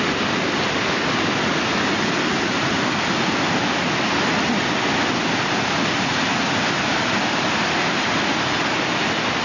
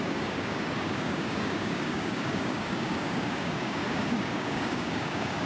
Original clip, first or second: first